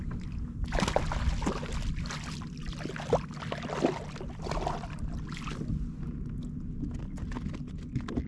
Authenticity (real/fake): real